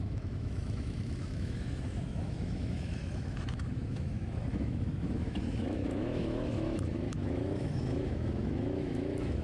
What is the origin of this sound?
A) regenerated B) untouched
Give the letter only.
A